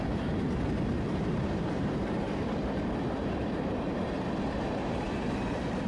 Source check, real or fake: fake